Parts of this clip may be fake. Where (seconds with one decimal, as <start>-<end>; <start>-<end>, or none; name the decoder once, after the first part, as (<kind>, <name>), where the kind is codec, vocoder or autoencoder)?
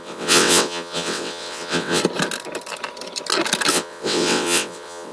0.0-2.0 (vocoder, WaveNeXt); 3.7-5.1